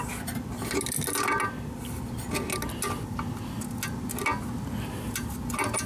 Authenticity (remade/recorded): recorded